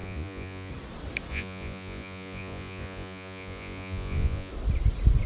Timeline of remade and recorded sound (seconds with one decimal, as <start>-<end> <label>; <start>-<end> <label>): 0.0-0.7 remade; 0.7-1.3 recorded; 1.3-4.5 remade; 4.5-5.3 recorded